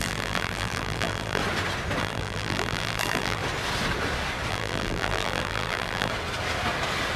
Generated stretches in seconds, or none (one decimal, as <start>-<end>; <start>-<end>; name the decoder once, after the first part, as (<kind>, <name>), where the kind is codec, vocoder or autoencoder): 0.0-1.4 (vocoder, BigVGAN v2); 2.0-3.4; 4.5-6.1